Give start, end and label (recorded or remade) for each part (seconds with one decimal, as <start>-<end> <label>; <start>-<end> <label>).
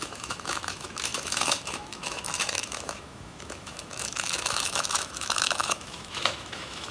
0.0-6.9 remade